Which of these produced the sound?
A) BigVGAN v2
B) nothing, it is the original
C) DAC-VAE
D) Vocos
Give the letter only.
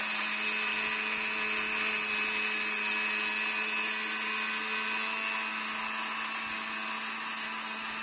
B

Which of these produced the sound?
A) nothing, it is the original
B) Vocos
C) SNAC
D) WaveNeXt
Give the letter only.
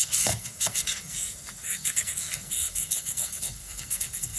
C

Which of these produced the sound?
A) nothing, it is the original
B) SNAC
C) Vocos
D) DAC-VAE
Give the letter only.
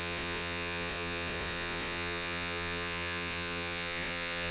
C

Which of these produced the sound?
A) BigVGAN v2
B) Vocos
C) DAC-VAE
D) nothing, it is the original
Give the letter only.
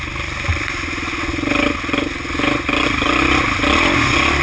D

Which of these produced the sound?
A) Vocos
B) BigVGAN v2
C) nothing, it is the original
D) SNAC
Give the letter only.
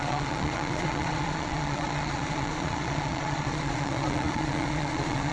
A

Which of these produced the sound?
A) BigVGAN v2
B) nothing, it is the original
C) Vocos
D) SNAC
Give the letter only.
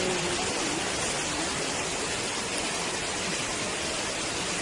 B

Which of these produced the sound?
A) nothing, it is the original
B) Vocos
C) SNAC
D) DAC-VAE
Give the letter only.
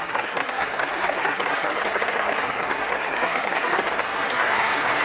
C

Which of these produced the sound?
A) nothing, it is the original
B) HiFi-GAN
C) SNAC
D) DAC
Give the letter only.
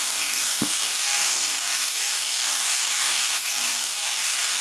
D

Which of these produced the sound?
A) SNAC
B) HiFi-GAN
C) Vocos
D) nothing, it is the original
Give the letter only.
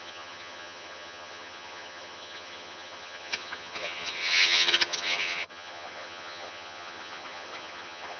B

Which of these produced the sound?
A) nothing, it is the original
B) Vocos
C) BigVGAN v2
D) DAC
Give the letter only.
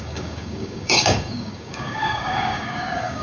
D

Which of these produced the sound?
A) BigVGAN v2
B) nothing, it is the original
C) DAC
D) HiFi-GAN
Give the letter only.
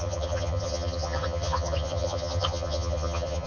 D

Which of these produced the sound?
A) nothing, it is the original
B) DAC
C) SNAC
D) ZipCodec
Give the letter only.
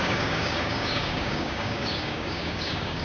B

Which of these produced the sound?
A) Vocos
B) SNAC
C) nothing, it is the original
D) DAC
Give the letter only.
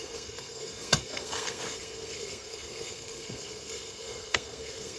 B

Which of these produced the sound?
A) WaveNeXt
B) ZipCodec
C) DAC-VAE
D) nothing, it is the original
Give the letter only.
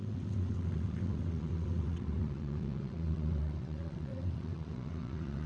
A